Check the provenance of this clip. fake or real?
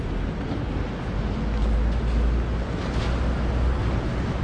real